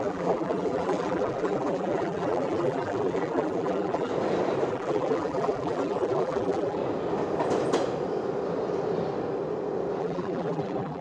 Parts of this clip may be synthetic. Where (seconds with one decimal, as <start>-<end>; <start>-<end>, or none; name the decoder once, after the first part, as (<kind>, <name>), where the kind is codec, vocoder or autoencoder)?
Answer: 0.0-4.1 (vocoder, BigVGAN v2); 4.7-6.8; 10.0-11.0